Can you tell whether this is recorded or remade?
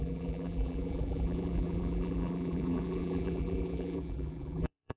remade